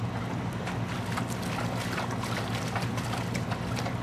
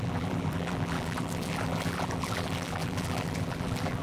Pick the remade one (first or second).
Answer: second